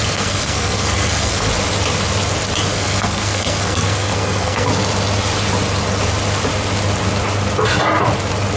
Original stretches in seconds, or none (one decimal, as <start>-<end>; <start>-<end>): 1.5-2.7; 4.7-8.6